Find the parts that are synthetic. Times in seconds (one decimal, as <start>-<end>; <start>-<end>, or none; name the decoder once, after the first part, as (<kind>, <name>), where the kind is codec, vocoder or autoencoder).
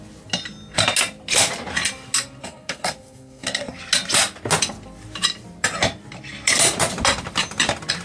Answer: 2.4-3.8 (codec, SNAC)